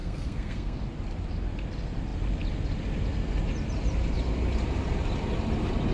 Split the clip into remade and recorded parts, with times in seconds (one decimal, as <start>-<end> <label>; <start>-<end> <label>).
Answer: 0.0-0.8 remade; 0.8-5.9 recorded